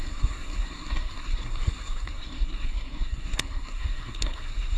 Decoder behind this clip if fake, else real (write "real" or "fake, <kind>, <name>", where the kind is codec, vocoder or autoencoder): fake, codec, SNAC